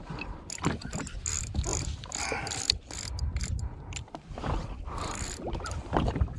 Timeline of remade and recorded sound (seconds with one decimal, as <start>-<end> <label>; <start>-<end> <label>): 0.0-6.4 recorded